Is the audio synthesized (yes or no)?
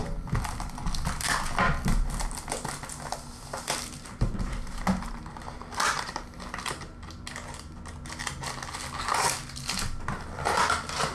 no